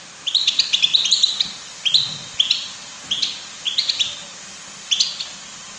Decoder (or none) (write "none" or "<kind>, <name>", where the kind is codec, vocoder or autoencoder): none